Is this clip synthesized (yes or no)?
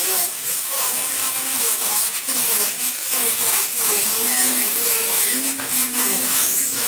yes